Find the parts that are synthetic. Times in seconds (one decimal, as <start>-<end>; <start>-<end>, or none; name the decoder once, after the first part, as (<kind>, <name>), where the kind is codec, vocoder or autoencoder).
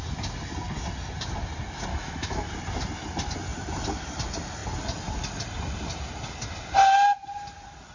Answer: 1.9-2.5 (autoencoder, DAC-VAE)